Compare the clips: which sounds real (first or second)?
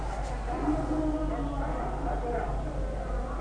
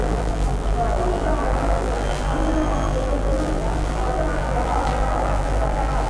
first